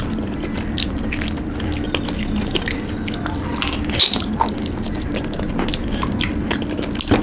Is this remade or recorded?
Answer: recorded